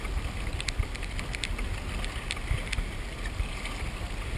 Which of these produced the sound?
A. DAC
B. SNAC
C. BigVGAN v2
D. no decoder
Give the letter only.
D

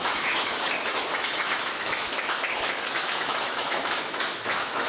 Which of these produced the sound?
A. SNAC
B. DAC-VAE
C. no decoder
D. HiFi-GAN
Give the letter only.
B